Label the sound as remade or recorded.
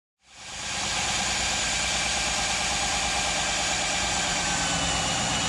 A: recorded